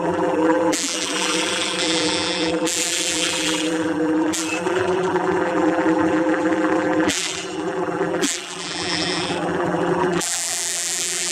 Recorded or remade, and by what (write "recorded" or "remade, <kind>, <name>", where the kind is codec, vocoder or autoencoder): remade, vocoder, BigVGAN v2